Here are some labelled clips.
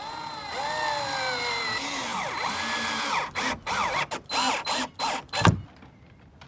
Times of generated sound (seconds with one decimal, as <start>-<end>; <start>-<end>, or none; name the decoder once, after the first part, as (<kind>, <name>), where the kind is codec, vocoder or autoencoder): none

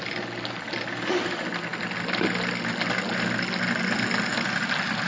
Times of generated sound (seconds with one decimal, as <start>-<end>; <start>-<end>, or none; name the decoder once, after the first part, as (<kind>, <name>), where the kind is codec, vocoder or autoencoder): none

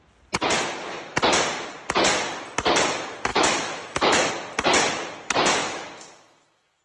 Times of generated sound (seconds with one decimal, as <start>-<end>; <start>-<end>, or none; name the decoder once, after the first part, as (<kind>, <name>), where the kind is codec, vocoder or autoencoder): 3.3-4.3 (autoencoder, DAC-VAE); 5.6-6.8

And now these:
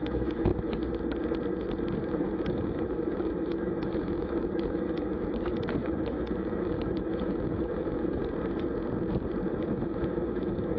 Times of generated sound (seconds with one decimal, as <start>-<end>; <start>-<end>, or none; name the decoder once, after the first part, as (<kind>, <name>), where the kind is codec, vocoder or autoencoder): 0.0-0.5 (autoencoder, DAC-VAE); 2.0-8.2; 9.5-10.8

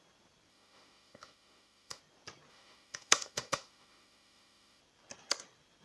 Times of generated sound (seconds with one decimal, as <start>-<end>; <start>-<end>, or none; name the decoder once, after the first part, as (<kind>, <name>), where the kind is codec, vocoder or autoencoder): 0.5-2.0 (autoencoder, DAC-VAE); 2.5-4.8

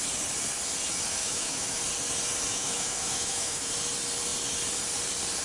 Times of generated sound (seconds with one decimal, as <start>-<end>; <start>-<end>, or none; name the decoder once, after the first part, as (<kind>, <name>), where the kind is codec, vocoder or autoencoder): 1.2-1.8 (autoencoder, DAC-VAE); 2.5-3.7

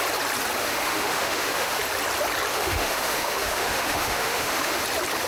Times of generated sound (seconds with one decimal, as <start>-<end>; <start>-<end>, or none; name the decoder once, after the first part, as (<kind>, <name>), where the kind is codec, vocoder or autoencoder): 0.6-1.8 (autoencoder, DAC-VAE); 2.5-4.8

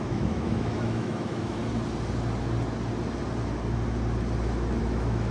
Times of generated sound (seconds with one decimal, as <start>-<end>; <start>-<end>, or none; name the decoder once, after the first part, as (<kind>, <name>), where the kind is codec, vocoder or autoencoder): 0.0-1.6 (autoencoder, DAC-VAE); 4.8-5.3